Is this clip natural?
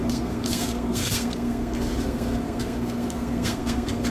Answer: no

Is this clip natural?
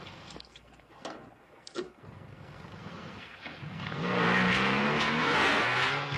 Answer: no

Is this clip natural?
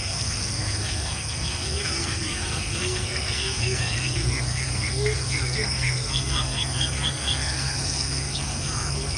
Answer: no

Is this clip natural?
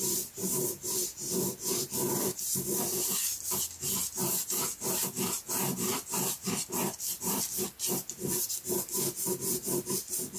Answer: yes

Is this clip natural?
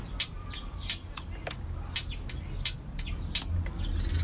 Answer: yes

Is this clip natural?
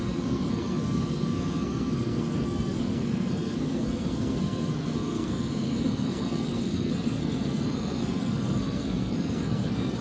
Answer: no